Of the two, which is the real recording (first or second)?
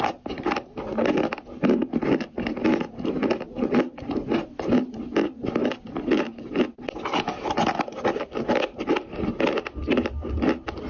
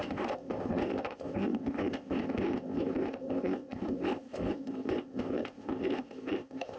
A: first